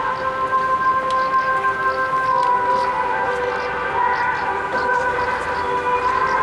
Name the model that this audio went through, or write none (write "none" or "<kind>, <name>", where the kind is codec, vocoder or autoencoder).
none